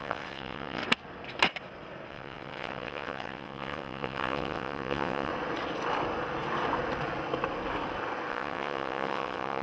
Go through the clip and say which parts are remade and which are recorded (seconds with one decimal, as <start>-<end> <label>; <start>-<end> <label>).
0.0-0.8 remade; 0.8-2.1 recorded; 2.1-5.3 remade; 5.3-8.3 recorded; 8.3-9.6 remade